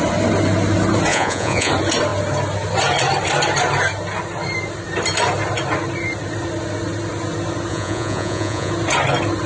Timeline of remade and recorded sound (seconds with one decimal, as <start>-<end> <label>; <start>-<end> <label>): 0.0-1.1 recorded; 1.1-1.7 remade; 1.7-7.7 recorded; 7.7-8.7 remade; 8.7-9.5 recorded